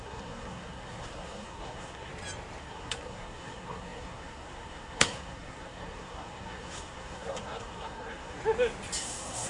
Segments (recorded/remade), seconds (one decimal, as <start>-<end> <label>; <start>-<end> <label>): 0.0-2.1 remade; 2.1-2.6 recorded; 2.6-8.4 remade; 8.4-9.0 recorded; 9.0-9.5 remade